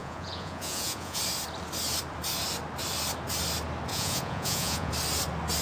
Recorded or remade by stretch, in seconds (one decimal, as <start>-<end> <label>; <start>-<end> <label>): 0.0-1.2 remade; 1.2-3.9 recorded; 3.9-4.9 remade; 4.9-5.6 recorded